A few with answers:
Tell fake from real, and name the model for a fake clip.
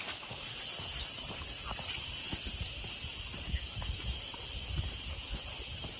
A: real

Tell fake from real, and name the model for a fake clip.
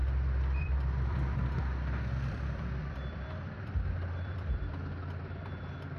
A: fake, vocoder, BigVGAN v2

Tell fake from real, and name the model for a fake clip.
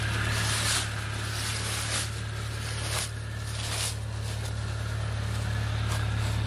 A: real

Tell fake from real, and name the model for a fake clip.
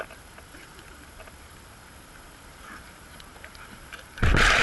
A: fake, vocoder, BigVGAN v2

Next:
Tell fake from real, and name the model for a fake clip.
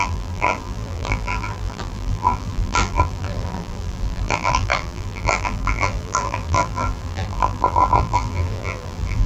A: fake, vocoder, BigVGAN v2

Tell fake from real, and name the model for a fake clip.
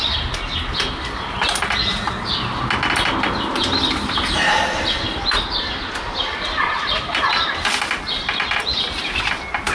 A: real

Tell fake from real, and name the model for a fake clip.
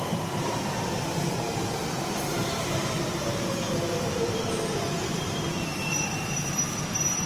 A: fake, vocoder, BigVGAN v2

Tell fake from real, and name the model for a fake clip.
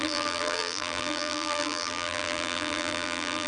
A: fake, vocoder, BigVGAN v2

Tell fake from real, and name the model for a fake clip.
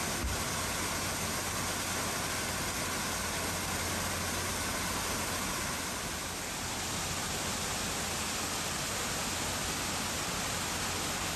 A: real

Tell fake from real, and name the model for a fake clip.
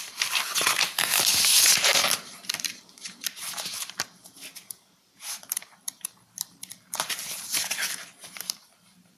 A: fake, vocoder, BigVGAN v2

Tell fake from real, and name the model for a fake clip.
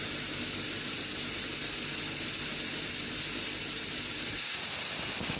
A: real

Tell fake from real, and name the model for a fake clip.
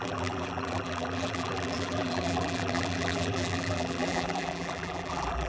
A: fake, vocoder, BigVGAN v2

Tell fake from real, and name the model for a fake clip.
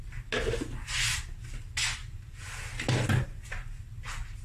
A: real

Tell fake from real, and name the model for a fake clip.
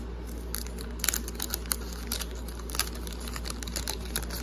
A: real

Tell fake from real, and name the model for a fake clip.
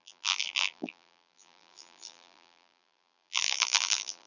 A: fake, vocoder, BigVGAN v2